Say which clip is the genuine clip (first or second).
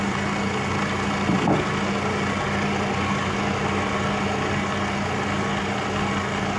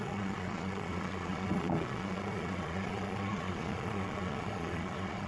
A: first